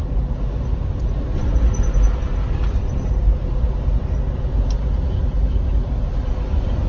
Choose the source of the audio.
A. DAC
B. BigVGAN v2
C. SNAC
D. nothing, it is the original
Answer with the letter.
D